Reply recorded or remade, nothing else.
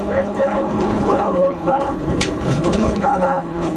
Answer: remade